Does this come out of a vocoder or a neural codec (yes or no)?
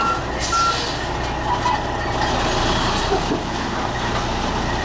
no